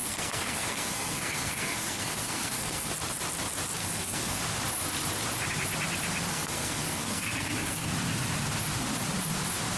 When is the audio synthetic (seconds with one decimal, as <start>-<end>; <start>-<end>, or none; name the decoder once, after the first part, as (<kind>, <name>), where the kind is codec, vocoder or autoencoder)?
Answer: 0.0-2.9 (codec, SNAC); 3.8-4.4; 6.3-7.9